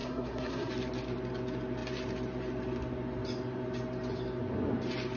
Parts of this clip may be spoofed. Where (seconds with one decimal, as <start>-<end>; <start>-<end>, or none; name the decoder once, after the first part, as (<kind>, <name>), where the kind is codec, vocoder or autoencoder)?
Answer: 0.0-0.7 (codec, SNAC)

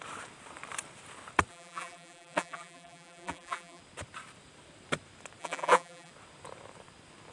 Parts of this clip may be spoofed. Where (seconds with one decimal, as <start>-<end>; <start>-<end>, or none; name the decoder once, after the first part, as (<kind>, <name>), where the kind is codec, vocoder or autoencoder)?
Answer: 1.5-3.8 (vocoder, BigVGAN v2); 5.4-6.1

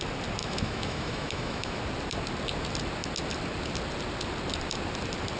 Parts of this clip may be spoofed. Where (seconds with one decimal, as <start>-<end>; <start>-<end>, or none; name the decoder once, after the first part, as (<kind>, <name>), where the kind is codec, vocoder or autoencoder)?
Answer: 0.4-1.8 (autoencoder, DAC-VAE)